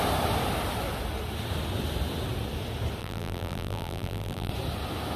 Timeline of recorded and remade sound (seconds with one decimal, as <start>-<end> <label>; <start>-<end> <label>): 0.0-3.0 recorded; 3.0-4.5 remade; 4.5-5.2 recorded